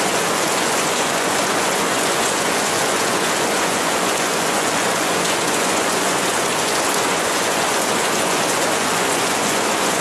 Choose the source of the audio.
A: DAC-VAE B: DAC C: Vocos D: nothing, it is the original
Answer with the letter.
C